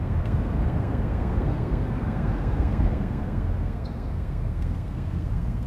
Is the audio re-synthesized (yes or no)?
yes